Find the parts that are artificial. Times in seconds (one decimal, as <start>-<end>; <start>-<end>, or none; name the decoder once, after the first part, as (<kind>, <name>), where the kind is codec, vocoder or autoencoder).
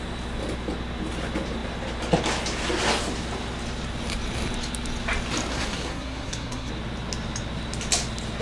5.5-6.7 (codec, SNAC)